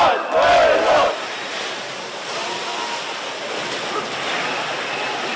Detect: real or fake real